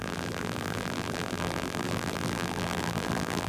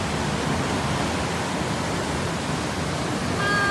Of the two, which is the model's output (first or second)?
first